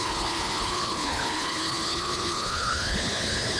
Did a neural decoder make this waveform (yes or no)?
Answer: yes